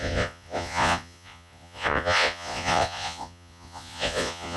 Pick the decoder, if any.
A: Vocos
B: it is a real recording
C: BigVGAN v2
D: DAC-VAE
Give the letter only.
A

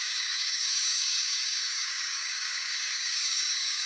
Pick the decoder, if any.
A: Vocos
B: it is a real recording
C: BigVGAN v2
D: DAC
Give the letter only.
D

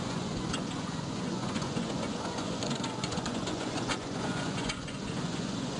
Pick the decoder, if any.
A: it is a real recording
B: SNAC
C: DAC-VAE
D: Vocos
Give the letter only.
D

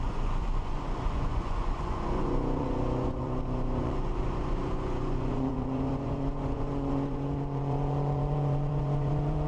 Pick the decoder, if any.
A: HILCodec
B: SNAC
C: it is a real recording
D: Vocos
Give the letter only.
D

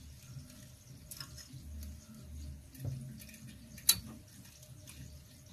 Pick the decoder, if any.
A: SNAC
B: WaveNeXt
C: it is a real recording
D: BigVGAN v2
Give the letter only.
C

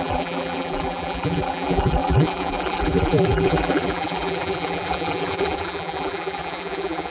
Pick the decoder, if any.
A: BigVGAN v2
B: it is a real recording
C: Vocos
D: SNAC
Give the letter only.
A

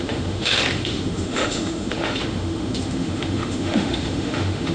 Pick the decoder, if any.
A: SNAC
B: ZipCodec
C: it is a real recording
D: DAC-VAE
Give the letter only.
D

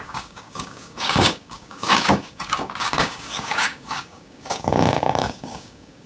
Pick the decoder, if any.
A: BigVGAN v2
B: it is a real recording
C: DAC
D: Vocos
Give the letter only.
C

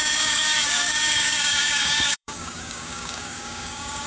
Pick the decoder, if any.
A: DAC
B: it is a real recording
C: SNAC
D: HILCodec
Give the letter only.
A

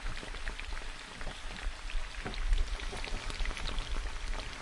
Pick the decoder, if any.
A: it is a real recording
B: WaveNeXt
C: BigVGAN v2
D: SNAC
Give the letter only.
A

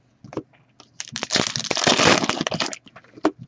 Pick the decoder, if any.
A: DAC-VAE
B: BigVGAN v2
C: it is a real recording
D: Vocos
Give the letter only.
C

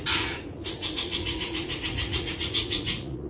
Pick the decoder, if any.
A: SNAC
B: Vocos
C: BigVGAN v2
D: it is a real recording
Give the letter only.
B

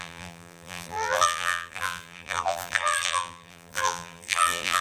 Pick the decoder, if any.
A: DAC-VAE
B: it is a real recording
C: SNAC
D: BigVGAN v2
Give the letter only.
D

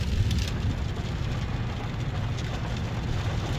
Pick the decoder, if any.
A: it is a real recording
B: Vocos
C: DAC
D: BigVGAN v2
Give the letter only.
A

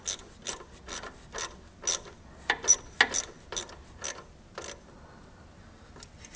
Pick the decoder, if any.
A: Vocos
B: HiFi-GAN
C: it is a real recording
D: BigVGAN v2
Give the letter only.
C